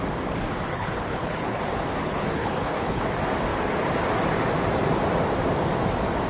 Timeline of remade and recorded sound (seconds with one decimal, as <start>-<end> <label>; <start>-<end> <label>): 0.0-0.7 recorded; 0.7-1.6 remade; 1.6-2.0 recorded; 2.0-3.0 remade; 3.0-6.3 recorded